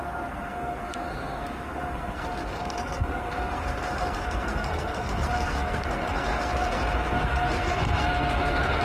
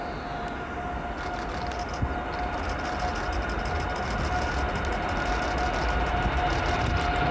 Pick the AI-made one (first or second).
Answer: first